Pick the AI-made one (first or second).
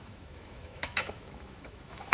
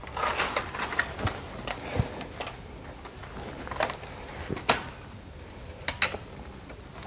first